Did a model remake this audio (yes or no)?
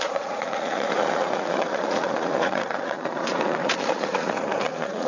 yes